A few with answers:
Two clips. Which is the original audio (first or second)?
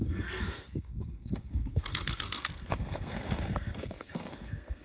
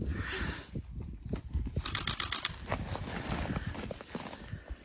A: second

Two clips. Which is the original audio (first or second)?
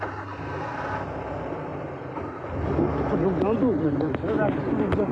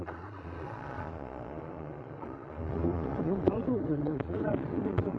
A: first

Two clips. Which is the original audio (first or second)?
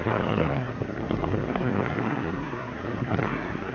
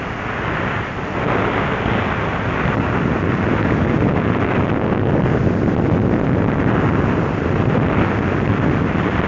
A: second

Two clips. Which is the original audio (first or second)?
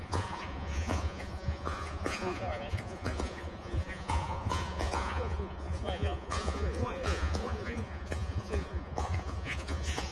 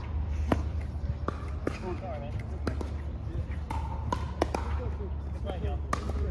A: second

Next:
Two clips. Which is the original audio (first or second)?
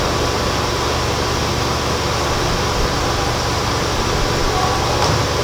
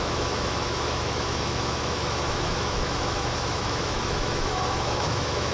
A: first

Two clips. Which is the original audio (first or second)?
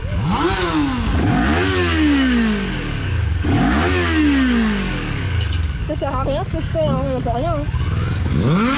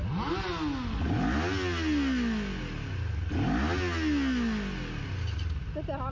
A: second